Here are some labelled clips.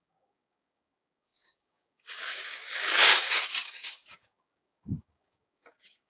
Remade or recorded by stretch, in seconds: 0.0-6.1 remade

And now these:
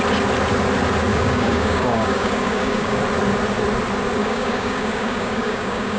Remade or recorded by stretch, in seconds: 0.0-1.1 recorded; 1.1-3.0 remade; 3.0-4.2 recorded; 4.2-6.0 remade